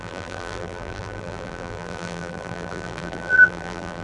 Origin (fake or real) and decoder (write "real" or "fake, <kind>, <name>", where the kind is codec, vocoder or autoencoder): fake, vocoder, BigVGAN v2